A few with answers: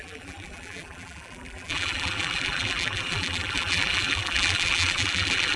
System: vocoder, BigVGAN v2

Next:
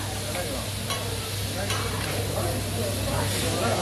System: none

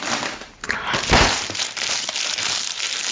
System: vocoder, BigVGAN v2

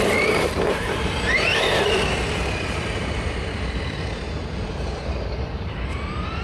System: vocoder, BigVGAN v2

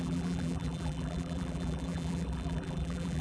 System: vocoder, BigVGAN v2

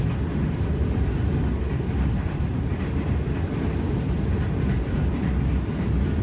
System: none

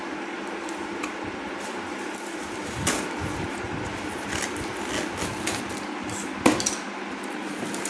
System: none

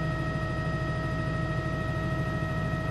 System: none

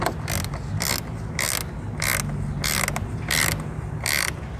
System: none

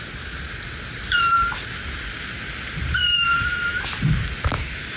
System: none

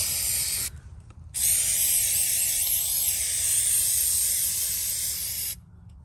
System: none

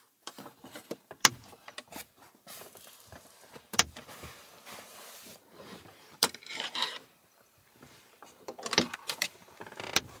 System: vocoder, BigVGAN v2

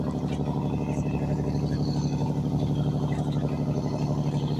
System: vocoder, BigVGAN v2